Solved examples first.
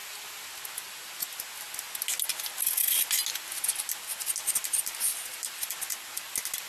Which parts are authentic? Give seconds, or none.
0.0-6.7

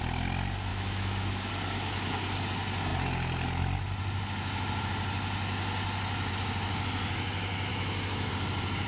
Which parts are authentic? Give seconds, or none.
0.0-0.7; 1.5-7.7; 8.3-8.9

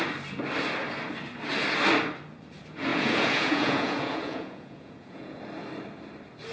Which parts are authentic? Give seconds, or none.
0.0-2.9; 5.4-6.5

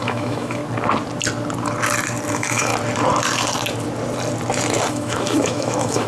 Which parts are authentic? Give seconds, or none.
0.6-2.3; 2.7-4.9